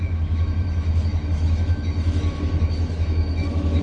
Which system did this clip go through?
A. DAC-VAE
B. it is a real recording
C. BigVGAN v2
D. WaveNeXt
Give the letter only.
A